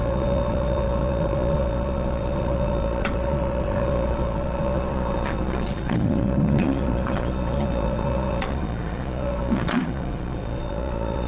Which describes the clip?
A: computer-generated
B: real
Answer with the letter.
A